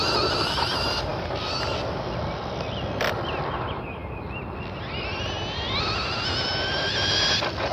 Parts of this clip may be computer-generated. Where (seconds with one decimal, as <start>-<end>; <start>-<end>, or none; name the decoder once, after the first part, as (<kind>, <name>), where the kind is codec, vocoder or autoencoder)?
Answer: none